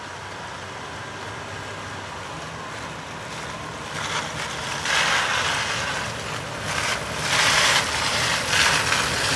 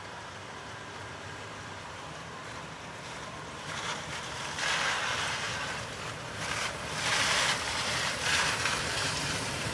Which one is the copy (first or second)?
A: second